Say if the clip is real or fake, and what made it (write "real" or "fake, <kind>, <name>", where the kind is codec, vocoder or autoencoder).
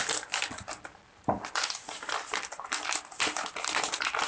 fake, vocoder, BigVGAN v2